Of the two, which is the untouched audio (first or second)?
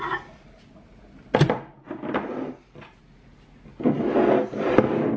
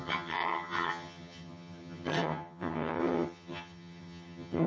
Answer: first